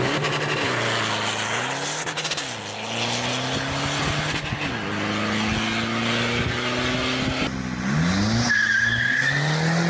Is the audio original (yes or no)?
yes